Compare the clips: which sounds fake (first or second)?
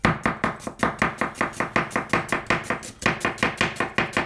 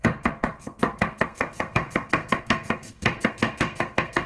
second